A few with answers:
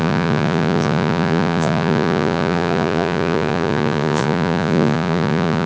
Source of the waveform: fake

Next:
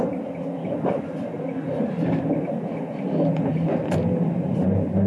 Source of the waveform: real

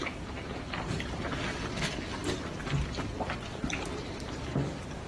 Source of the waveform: real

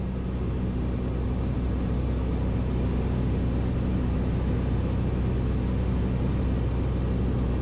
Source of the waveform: real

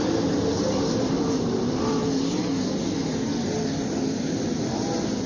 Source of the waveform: real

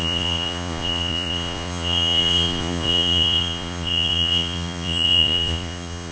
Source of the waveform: fake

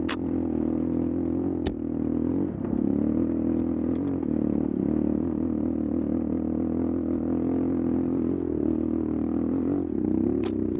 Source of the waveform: real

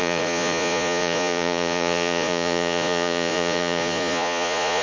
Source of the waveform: fake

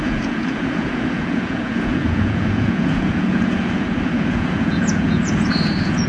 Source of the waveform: fake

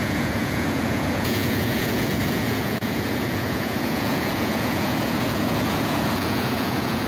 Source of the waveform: fake